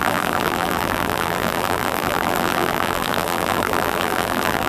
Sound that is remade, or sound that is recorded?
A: remade